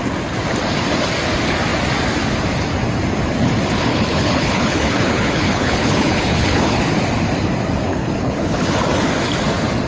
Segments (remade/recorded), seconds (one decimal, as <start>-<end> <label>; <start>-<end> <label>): 0.0-3.9 recorded; 3.9-6.8 remade; 6.8-7.9 recorded; 7.9-8.7 remade; 8.7-9.9 recorded